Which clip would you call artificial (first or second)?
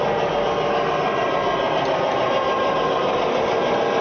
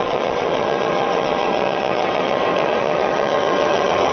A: second